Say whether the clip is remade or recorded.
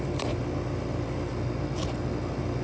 recorded